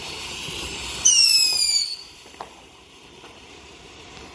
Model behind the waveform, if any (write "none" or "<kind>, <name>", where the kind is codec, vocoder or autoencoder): vocoder, BigVGAN v2